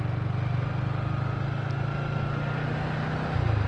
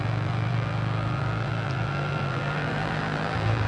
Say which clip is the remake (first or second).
second